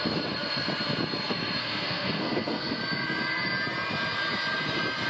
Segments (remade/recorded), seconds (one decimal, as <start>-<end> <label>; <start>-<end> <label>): 0.0-1.6 recorded; 1.6-2.8 remade; 2.8-5.1 recorded